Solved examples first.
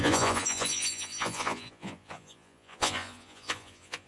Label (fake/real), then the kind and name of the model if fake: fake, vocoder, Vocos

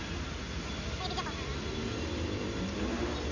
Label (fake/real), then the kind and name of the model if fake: real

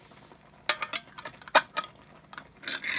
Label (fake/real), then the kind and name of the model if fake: real